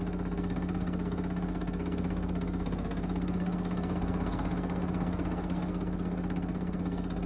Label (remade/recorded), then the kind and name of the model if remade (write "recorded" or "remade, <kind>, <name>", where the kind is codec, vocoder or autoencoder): remade, codec, SNAC